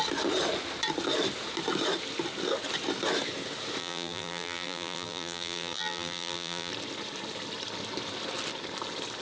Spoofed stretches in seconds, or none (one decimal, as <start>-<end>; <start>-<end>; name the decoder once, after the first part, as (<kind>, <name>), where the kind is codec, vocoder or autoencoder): 3.8-6.7 (vocoder, BigVGAN v2)